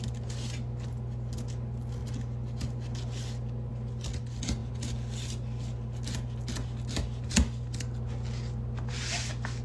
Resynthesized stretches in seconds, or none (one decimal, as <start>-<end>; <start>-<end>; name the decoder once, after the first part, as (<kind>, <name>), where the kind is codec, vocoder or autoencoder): none